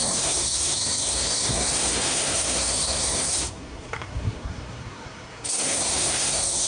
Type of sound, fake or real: fake